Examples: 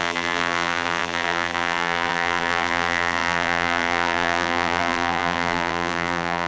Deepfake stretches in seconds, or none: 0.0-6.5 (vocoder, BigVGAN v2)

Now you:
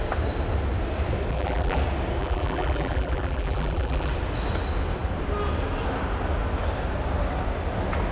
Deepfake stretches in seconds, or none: 1.3-1.8 (vocoder, BigVGAN v2); 2.2-4.1

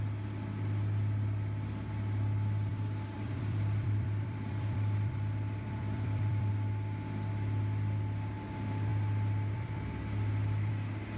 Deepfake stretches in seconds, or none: 2.7-6.5 (vocoder, BigVGAN v2); 8.9-10.7